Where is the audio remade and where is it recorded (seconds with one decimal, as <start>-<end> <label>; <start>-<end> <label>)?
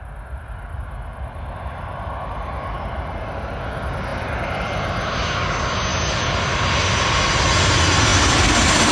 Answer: 0.0-5.9 recorded; 5.9-6.7 remade; 6.7-8.1 recorded; 8.1-8.9 remade